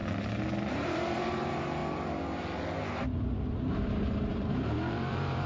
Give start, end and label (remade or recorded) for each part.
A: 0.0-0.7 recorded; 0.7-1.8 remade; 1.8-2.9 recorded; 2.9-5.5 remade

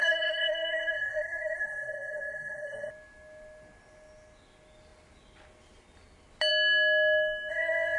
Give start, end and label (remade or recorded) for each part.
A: 0.0-2.9 remade; 2.9-7.5 recorded; 7.5-8.0 remade

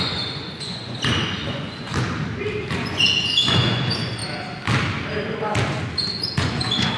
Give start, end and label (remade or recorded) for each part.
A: 0.0-1.9 remade; 1.9-2.7 recorded; 2.7-4.2 remade; 4.2-5.6 recorded; 5.6-7.0 remade

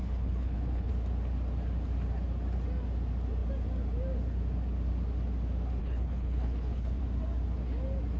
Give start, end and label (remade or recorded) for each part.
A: 0.0-0.9 remade; 0.9-5.8 recorded; 5.8-7.0 remade; 7.0-8.2 recorded

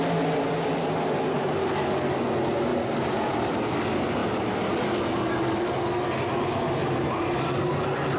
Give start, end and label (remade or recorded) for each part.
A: 0.0-2.7 recorded; 2.7-3.6 remade; 3.6-8.2 recorded

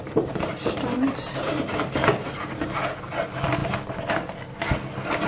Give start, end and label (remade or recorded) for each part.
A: 0.0-3.2 remade; 3.2-5.3 recorded

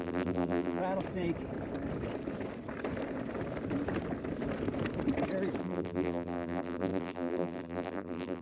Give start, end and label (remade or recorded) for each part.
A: 0.0-0.8 remade; 0.8-5.6 recorded; 5.6-8.4 remade